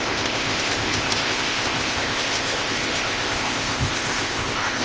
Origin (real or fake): fake